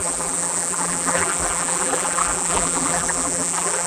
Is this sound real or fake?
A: fake